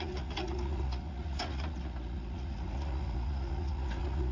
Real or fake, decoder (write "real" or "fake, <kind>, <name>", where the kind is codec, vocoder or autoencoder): fake, vocoder, Vocos